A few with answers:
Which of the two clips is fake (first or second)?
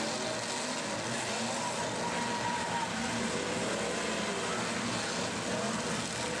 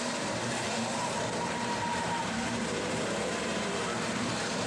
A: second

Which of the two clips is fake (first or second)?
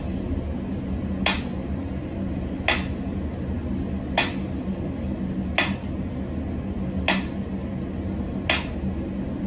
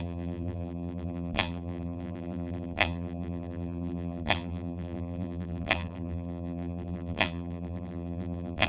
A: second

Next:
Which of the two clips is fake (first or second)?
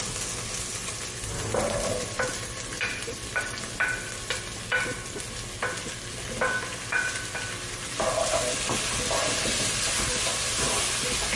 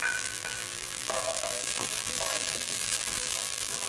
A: second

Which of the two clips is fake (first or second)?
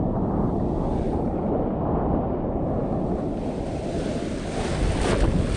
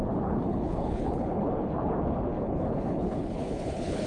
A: second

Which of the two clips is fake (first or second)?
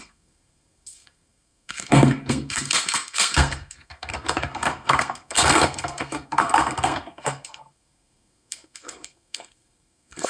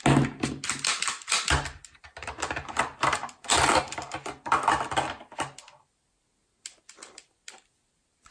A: first